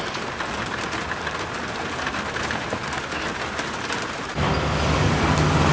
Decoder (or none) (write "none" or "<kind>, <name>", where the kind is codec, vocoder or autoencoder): none